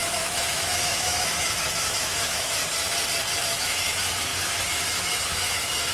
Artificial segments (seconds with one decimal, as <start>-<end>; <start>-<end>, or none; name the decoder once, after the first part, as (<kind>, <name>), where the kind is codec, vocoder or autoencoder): 0.0-2.6 (autoencoder, DAC-VAE); 3.4-5.9